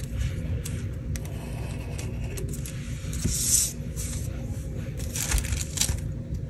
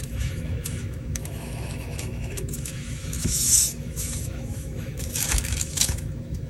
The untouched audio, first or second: first